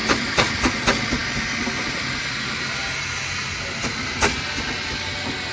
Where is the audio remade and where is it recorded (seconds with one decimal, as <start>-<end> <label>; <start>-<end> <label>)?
0.0-0.6 remade; 0.6-5.5 recorded